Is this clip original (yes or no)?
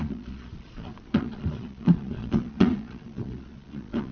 no